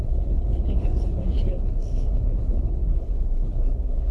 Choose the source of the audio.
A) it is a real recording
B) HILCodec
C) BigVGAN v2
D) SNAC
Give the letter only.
B